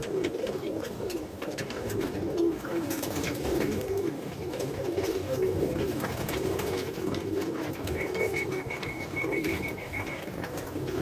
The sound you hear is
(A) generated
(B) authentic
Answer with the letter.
A